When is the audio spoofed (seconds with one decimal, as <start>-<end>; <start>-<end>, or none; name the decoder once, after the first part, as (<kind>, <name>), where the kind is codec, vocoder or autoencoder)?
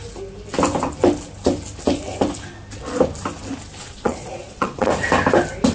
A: 3.8-4.9 (vocoder, Vocos)